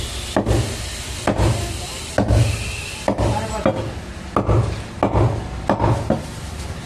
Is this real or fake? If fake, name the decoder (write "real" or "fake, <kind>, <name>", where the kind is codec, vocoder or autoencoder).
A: real